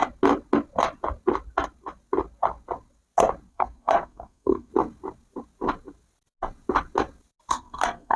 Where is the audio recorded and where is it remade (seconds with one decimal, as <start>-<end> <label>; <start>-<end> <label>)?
0.0-3.5 recorded; 3.5-4.7 remade; 4.7-7.5 recorded; 7.5-8.2 remade